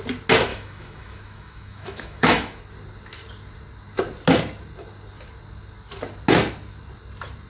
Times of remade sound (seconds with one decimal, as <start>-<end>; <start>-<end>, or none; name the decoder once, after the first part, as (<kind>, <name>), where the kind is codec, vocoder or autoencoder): 0.5-2.6 (autoencoder, DAC-VAE)